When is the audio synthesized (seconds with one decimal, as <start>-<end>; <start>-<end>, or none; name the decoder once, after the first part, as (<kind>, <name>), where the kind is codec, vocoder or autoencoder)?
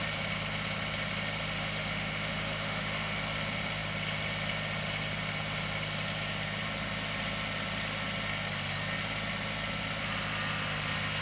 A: 1.4-3.2 (autoencoder, DAC-VAE)